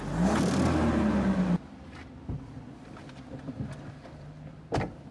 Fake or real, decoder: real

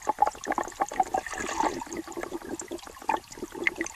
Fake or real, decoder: real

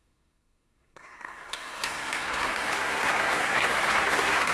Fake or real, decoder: fake, codec, SNAC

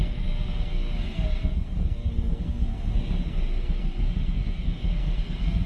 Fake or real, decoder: fake, codec, SNAC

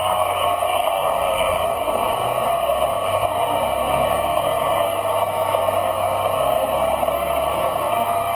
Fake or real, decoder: fake, codec, SNAC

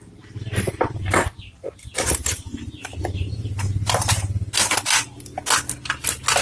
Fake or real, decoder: real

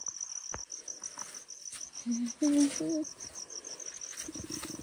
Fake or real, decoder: real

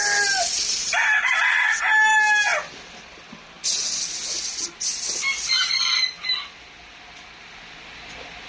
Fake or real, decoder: real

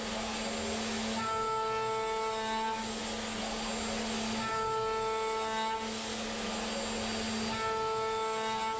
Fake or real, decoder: real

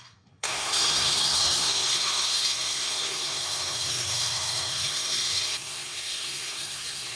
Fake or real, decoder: fake, codec, SNAC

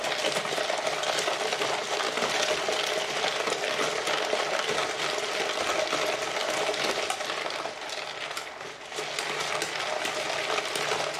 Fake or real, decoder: real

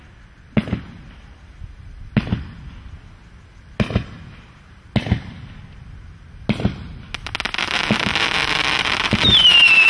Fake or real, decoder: real